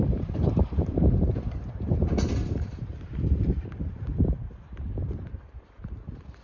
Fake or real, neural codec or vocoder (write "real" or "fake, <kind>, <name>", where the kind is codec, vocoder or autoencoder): fake, vocoder, BigVGAN v2